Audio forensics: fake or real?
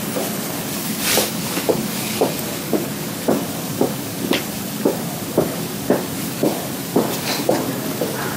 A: fake